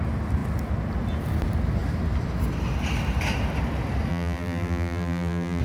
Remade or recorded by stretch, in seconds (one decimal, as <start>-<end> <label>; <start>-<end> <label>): 0.0-4.1 recorded; 4.1-5.6 remade